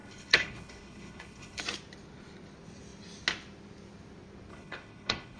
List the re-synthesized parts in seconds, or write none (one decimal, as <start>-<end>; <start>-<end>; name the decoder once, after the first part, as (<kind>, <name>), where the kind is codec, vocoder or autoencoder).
0.0-1.6 (codec, HILCodec); 4.5-5.4